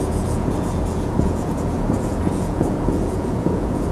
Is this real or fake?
fake